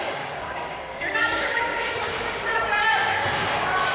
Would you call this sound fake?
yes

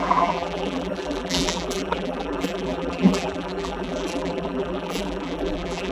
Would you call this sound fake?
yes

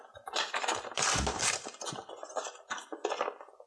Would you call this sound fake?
no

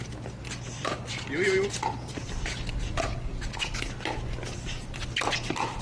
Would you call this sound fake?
no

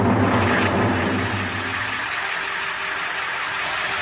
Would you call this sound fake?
no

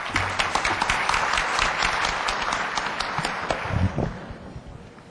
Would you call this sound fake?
no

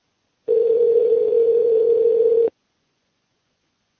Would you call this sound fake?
yes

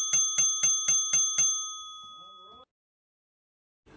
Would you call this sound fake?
no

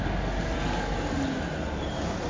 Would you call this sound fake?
no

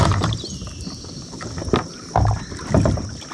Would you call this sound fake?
no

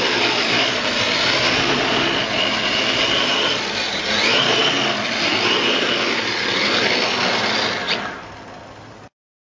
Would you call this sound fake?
no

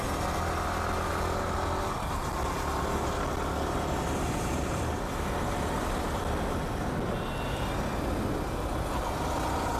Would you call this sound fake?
no